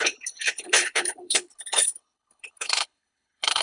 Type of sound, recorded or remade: remade